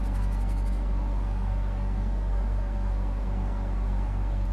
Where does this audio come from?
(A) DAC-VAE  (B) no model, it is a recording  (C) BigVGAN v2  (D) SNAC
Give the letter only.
D